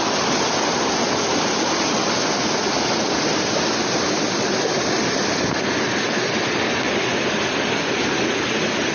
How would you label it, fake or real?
real